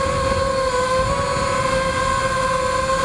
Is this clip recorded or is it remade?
recorded